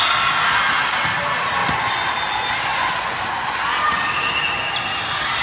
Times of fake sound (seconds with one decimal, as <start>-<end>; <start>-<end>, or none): 1.6-2.1; 2.7-3.7